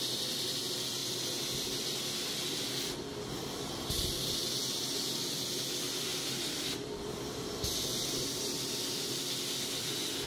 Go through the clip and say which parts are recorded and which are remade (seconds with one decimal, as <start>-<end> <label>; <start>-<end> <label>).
0.0-6.1 recorded; 6.1-7.6 remade; 7.6-10.3 recorded